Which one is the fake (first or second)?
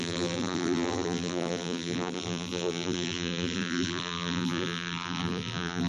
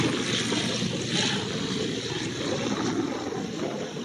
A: first